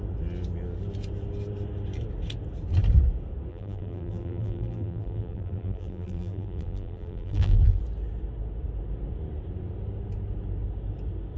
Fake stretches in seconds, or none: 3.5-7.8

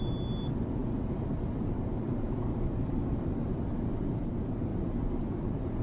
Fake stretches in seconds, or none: 0.8-4.3; 4.7-5.8

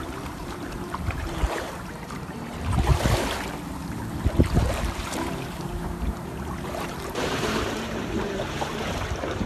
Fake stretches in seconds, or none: 0.0-2.9; 4.6-9.5